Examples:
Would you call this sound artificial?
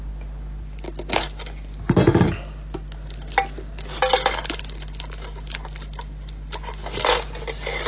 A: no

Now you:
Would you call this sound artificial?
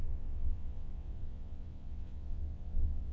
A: yes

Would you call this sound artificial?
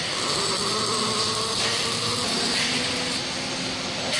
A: no